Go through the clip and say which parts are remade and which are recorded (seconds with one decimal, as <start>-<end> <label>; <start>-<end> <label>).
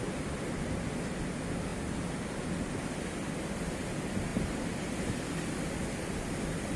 0.0-6.8 recorded